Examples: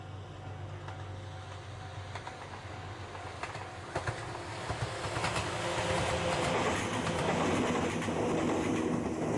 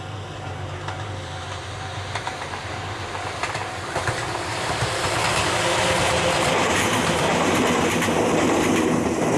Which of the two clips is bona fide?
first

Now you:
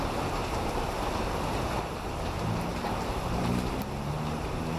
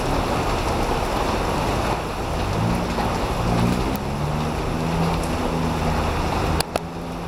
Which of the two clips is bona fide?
second